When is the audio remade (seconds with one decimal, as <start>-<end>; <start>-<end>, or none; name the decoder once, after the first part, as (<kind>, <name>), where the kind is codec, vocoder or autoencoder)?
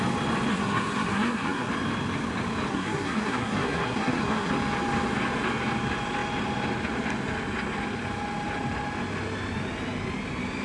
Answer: 0.5-1.7 (codec, SNAC); 2.7-4.5